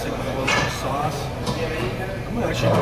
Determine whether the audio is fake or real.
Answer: fake